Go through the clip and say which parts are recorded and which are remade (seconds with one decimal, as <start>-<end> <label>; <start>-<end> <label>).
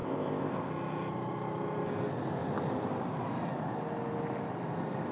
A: 0.0-0.7 remade; 0.7-5.1 recorded